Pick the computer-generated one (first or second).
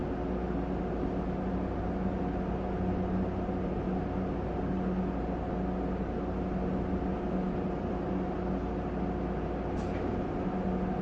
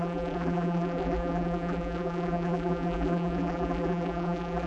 second